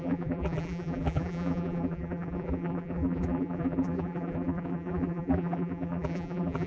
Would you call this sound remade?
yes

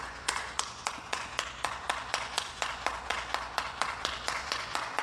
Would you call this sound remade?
yes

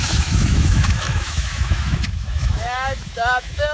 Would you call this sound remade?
yes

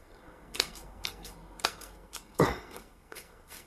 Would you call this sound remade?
yes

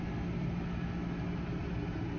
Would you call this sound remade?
no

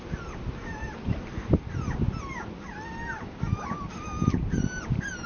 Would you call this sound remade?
no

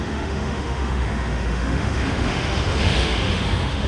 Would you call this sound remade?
yes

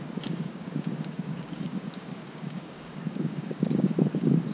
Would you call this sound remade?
yes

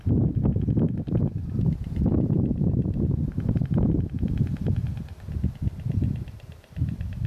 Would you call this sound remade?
no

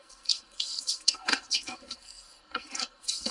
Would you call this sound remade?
yes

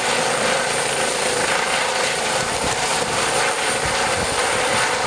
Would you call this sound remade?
no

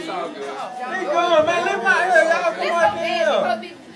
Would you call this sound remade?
yes